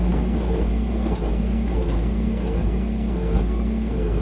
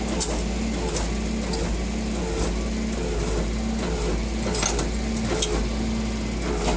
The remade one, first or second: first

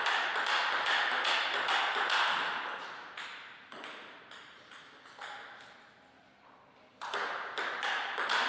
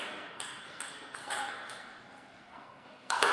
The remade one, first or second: second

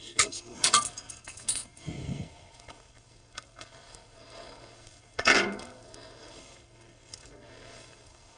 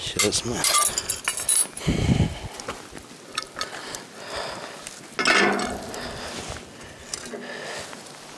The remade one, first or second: first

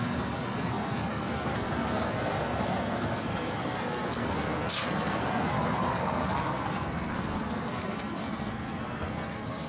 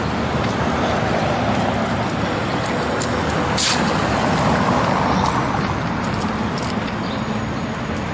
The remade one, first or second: first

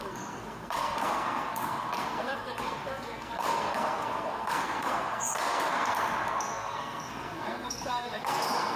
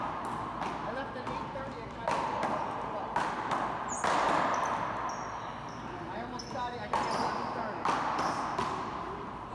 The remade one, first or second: first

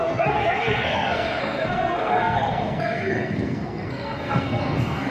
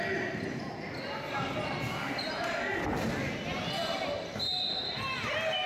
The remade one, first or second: first